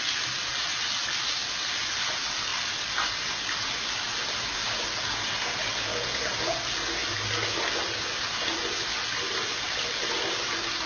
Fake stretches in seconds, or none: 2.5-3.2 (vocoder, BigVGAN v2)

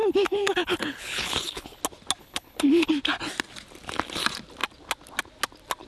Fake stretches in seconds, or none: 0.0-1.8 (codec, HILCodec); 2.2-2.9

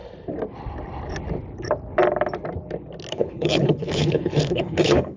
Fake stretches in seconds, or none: 3.1-5.2 (codec, HILCodec)

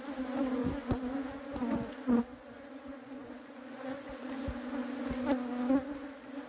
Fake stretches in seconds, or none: 0.6-4.1 (vocoder, Vocos)

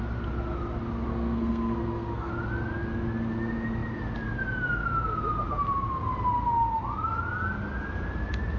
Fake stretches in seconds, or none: 1.1-2.3 (codec, SNAC)

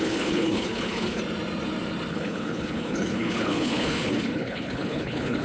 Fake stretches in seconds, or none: 0.0-1.2 (codec, HILCodec); 2.1-5.4

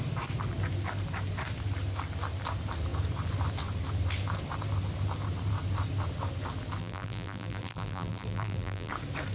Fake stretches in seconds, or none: 6.8-8.9 (vocoder, BigVGAN v2)

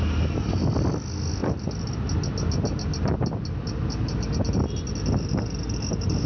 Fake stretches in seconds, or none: none